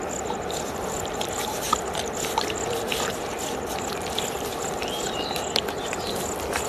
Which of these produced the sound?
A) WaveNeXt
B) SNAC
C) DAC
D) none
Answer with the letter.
D